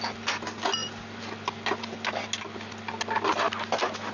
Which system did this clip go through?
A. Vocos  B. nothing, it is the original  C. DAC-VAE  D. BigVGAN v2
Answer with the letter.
B